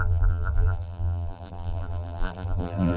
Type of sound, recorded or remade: remade